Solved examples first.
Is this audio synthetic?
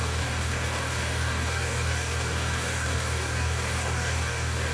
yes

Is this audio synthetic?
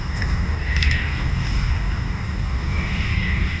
yes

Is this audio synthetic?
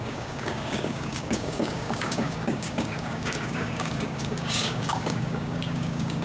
yes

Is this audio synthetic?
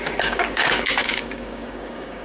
yes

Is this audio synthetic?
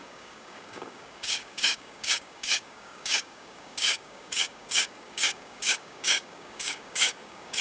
yes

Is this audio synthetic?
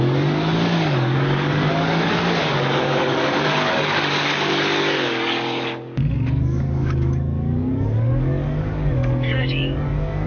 yes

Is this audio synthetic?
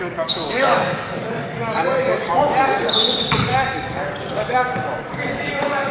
yes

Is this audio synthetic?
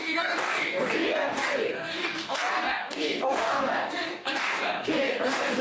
yes